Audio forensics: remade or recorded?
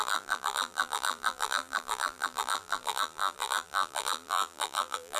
remade